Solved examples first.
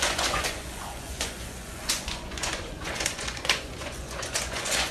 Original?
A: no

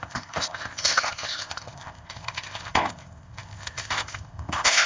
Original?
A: no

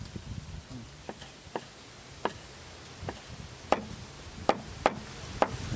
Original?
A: yes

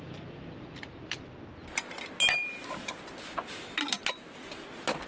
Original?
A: yes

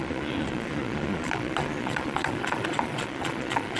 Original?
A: no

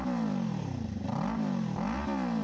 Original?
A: yes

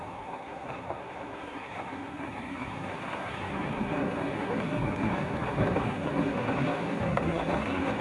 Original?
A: no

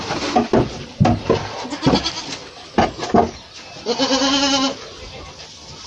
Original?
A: yes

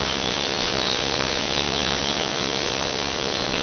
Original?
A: no